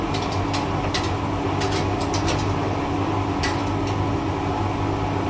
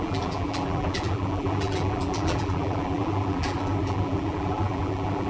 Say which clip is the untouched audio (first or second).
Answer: first